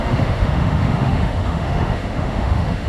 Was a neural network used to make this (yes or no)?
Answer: yes